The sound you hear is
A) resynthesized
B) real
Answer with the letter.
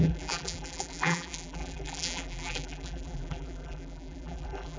A